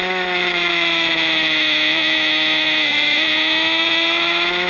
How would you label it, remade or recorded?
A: remade